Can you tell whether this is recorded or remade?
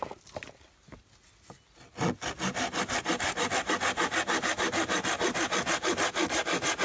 recorded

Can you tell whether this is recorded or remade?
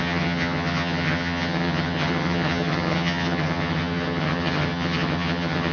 remade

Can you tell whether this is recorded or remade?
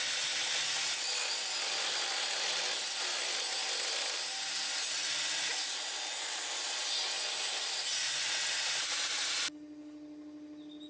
recorded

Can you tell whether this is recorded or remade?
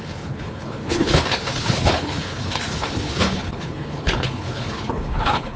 remade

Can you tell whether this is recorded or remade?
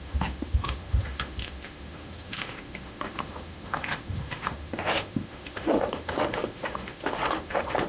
remade